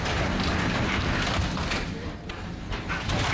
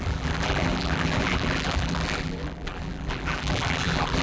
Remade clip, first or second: second